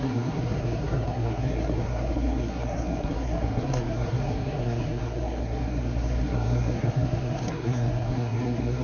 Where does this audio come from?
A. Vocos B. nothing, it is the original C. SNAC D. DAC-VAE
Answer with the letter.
C